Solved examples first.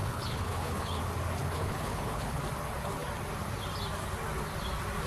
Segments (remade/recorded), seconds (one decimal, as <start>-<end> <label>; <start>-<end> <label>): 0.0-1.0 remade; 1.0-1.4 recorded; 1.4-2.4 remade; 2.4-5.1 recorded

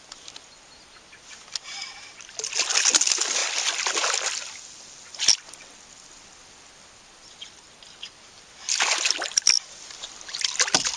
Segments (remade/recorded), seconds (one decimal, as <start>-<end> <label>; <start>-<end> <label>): 0.0-11.0 recorded

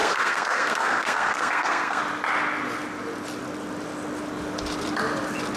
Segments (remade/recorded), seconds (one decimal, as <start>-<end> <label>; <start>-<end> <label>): 0.0-2.0 remade; 2.0-5.6 recorded

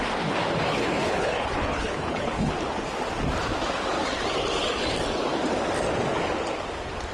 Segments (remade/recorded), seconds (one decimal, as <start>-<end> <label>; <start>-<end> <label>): 0.0-0.7 recorded; 0.7-2.5 remade; 2.5-7.1 recorded